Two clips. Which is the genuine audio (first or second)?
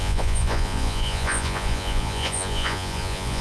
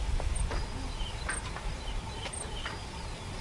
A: second